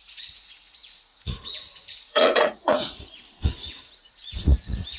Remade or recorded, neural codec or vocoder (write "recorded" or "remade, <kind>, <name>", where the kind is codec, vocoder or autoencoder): remade, vocoder, Vocos